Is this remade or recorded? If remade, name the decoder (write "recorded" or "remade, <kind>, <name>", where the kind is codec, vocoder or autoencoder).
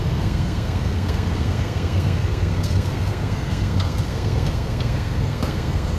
remade, codec, SNAC